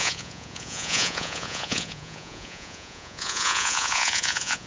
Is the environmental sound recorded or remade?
remade